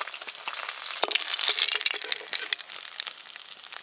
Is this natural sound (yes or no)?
yes